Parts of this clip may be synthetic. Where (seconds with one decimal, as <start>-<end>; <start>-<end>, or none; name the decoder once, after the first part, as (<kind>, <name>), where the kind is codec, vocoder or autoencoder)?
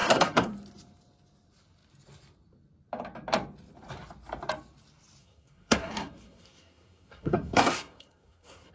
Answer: 0.0-0.5 (codec, SNAC); 5.2-8.7